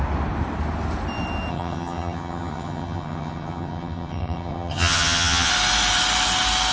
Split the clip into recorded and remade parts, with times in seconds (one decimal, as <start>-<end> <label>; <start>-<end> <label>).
0.0-1.5 recorded; 1.5-5.5 remade; 5.5-6.7 recorded